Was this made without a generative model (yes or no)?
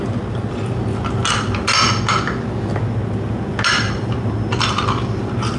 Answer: yes